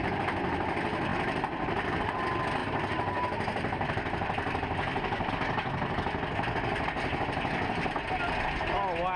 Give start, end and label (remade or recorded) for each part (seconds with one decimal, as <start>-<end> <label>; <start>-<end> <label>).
0.0-1.1 recorded; 1.1-2.1 remade; 2.1-2.6 recorded; 2.6-5.3 remade; 5.3-9.2 recorded